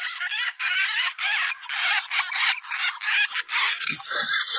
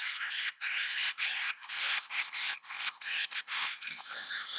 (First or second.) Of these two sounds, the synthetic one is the second